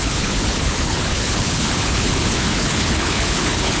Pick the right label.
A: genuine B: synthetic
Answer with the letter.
B